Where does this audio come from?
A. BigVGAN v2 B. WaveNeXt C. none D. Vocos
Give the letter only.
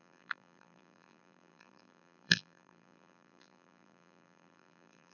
A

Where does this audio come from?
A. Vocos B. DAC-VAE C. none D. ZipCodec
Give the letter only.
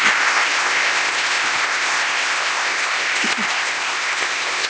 D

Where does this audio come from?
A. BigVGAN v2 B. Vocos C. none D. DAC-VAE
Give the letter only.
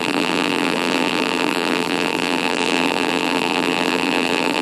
A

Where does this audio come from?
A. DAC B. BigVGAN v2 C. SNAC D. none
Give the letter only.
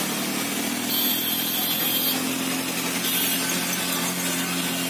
D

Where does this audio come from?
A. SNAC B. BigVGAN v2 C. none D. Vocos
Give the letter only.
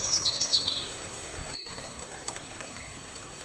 A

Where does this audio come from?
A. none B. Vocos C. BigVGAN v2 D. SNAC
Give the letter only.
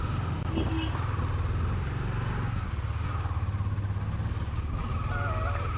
A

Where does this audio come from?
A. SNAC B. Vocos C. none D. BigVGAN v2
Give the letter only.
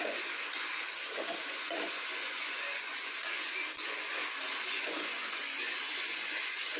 B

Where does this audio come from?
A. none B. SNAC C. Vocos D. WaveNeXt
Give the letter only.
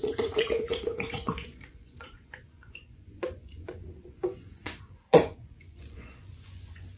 C